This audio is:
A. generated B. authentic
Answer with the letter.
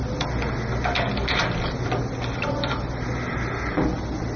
B